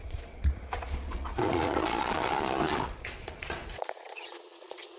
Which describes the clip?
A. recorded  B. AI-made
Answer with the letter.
B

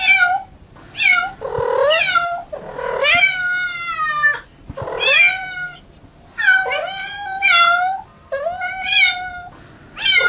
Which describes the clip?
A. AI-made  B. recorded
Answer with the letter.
B